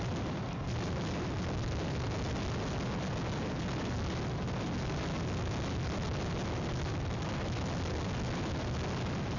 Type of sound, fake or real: real